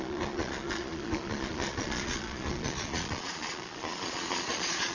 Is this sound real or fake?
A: fake